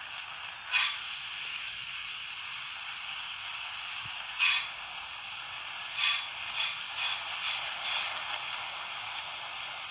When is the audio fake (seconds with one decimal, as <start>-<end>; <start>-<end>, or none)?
1.5-2.1